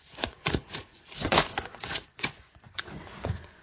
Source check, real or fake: fake